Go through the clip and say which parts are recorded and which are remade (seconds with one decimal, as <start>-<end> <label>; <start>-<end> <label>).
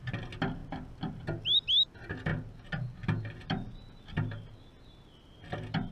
0.0-5.9 recorded